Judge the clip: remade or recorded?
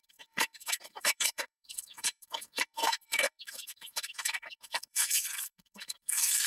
remade